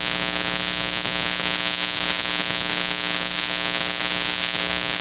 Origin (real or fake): fake